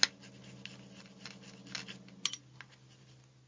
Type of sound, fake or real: real